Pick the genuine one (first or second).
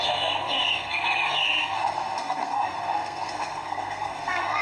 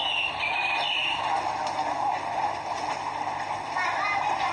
second